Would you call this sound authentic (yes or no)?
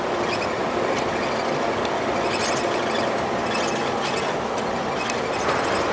yes